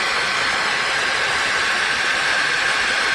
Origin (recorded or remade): recorded